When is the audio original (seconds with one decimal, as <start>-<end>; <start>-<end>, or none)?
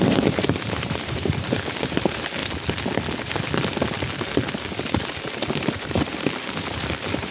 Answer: 2.4-5.7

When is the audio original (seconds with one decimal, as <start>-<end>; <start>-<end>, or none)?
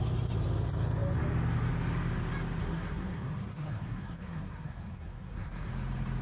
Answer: 0.0-2.6; 5.7-6.2